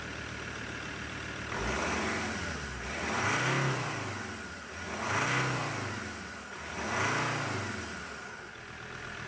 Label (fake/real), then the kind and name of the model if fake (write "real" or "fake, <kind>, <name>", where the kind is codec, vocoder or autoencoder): real